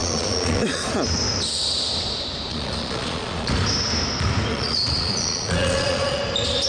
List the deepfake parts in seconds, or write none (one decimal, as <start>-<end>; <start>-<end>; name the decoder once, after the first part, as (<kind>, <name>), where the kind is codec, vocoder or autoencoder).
0.0-0.8 (vocoder, Vocos); 2.5-3.5; 4.5-6.2